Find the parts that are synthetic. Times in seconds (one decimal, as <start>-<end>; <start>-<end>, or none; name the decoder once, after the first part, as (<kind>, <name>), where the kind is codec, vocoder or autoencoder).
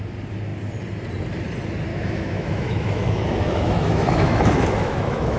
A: 1.9-5.4 (autoencoder, DAC-VAE)